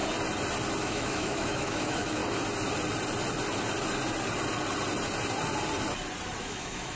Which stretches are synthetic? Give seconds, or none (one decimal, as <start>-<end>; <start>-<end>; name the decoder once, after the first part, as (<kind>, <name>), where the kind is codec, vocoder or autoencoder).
0.8-2.2 (autoencoder, DAC-VAE); 6.4-7.0